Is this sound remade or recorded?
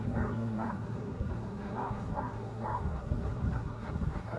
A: remade